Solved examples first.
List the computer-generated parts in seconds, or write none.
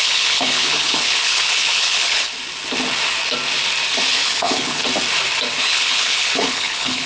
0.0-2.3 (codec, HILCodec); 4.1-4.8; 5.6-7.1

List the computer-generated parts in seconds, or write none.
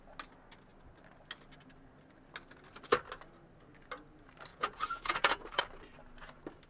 4.5-5.6 (vocoder, Vocos)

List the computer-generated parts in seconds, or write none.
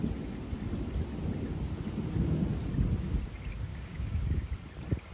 3.7-4.5 (codec, DAC)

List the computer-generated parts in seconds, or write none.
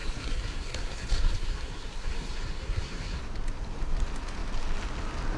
0.0-3.2 (codec, SNAC)